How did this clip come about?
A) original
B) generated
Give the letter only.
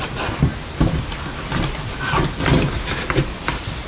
A